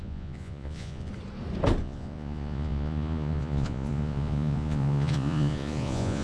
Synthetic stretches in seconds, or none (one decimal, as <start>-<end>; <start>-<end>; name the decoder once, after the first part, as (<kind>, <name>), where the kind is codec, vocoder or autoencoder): 0.0-1.1 (vocoder, Vocos); 1.8-6.2